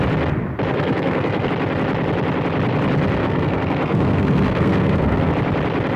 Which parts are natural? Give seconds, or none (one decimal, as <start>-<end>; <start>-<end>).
0.0-0.7; 1.5-3.2; 5.3-6.0